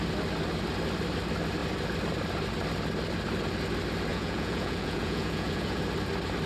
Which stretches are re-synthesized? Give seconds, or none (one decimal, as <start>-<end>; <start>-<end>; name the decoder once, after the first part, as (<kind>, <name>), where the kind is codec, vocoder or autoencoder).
4.1-5.8 (vocoder, Vocos)